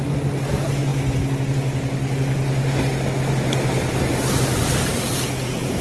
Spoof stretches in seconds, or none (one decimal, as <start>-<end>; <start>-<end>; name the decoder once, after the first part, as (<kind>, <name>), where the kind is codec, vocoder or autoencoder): 4.9-5.8 (vocoder, BigVGAN v2)